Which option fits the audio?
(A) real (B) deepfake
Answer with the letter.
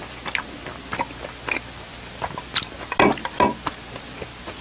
A